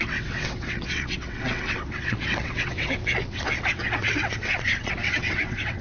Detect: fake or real fake